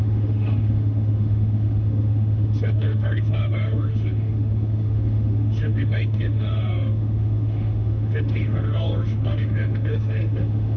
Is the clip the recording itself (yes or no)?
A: no